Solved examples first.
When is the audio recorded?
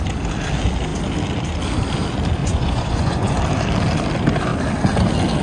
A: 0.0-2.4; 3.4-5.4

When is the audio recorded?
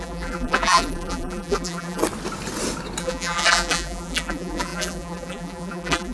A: 2.0-3.0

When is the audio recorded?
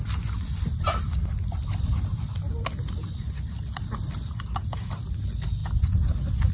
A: 0.0-6.5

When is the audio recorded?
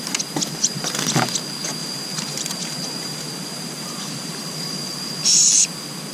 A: 0.0-1.8; 5.5-6.1